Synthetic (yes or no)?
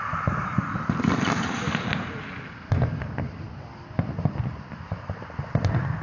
yes